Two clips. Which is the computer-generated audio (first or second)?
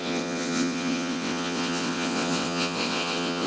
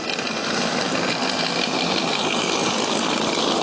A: first